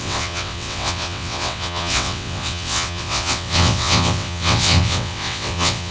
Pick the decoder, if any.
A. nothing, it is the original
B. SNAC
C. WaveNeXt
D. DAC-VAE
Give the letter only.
C